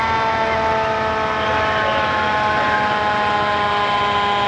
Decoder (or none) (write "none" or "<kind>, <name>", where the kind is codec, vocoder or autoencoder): none